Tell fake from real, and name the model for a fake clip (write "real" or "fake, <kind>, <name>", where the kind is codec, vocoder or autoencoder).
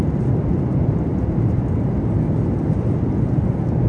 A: real